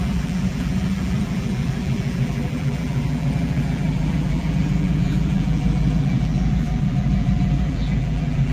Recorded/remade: remade